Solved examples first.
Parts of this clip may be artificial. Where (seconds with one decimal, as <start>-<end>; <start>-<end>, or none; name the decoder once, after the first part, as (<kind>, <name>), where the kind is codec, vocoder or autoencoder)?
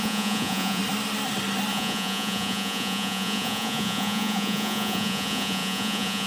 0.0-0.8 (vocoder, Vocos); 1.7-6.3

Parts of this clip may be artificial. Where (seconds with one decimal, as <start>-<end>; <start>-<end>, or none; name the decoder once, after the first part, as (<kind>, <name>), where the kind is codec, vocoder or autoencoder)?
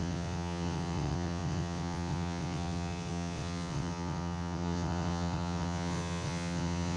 0.0-7.0 (vocoder, WaveNeXt)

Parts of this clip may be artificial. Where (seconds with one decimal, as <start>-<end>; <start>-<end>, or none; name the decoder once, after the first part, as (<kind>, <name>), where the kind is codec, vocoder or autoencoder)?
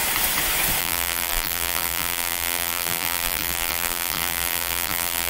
0.8-5.3 (vocoder, BigVGAN v2)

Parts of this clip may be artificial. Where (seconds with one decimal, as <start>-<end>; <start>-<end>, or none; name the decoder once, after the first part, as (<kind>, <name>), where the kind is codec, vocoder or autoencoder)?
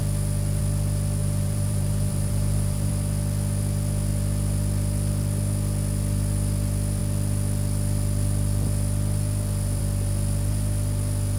1.2-2.9 (vocoder, BigVGAN v2)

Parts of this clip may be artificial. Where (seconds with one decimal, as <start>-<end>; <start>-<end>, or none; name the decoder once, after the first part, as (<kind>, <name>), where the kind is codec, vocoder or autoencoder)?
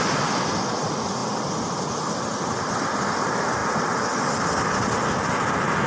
none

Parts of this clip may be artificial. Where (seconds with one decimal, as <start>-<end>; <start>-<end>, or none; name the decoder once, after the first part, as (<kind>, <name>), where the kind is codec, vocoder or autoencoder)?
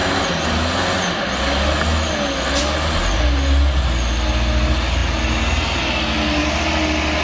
none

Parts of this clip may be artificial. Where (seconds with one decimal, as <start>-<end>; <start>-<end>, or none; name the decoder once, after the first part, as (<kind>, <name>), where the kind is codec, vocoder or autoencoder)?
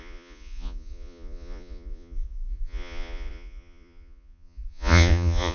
0.0-5.5 (vocoder, Vocos)